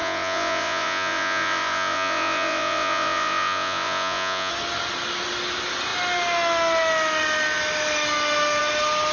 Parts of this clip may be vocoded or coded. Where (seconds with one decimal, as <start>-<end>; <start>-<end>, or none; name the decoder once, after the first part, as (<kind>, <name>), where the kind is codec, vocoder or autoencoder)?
0.0-4.5 (vocoder, Vocos)